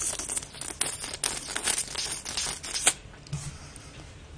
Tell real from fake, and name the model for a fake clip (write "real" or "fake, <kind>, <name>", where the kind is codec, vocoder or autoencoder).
real